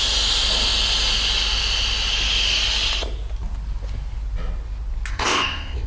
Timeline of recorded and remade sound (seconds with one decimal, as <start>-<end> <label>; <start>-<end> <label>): 0.0-5.1 recorded; 5.1-5.9 remade